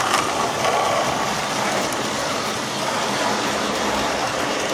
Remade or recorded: remade